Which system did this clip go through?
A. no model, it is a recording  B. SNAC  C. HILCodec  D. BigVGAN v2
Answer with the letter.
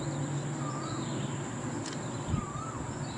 A